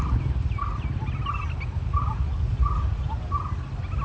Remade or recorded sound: recorded